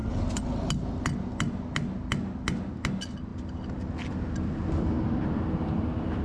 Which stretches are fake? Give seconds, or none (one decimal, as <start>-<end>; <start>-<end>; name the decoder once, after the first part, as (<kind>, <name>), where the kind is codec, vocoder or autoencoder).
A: none